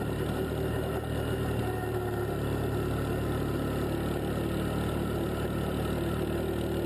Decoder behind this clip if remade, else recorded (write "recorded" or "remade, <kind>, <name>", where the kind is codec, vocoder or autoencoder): recorded